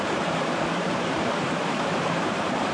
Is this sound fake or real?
fake